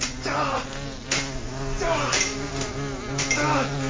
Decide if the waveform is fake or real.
real